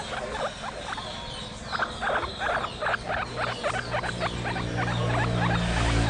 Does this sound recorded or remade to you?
recorded